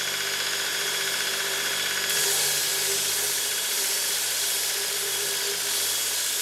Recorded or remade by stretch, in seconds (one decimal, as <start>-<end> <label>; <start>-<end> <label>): 0.0-0.7 recorded; 0.7-1.9 remade; 1.9-2.7 recorded; 2.7-5.0 remade; 5.0-6.4 recorded